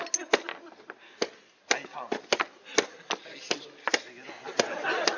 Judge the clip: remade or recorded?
recorded